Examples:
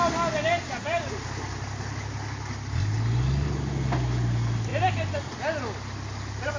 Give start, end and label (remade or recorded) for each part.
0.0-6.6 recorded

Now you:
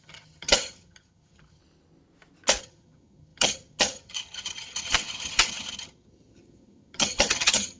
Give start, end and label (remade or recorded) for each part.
0.0-1.6 remade; 1.6-2.6 recorded; 2.6-7.8 remade

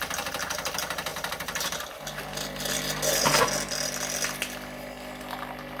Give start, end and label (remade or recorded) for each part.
0.0-5.8 recorded

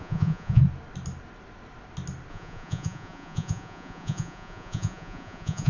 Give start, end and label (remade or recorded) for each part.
0.0-0.6 remade; 0.6-2.3 recorded; 2.3-5.7 remade